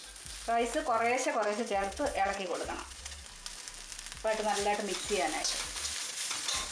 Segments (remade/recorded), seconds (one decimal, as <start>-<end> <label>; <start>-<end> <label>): 0.0-1.3 recorded; 1.3-3.2 remade; 3.2-6.0 recorded; 6.0-6.7 remade